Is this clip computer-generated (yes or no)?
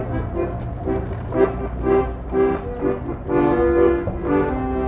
no